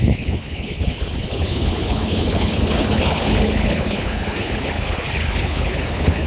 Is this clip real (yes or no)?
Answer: no